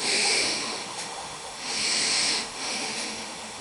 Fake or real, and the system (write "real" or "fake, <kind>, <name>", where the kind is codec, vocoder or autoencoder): fake, autoencoder, DAC-VAE